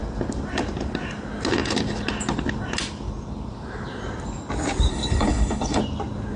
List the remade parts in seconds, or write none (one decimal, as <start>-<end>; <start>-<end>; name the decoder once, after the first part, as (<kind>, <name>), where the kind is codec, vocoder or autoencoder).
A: 4.9-5.8 (codec, HILCodec)